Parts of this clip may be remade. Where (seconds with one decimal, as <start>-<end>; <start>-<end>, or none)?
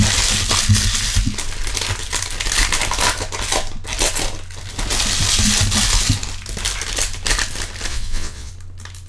7.9-8.5